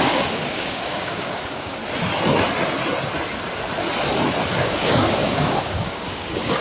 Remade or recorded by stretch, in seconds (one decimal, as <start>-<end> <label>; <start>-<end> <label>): 0.0-1.8 remade; 1.8-4.5 recorded; 4.5-6.6 remade